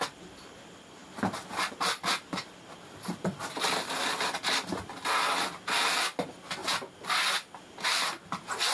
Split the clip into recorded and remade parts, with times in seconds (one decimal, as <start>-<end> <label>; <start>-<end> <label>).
0.0-1.0 remade; 1.0-1.7 recorded; 1.7-6.6 remade; 6.6-7.3 recorded; 7.3-8.7 remade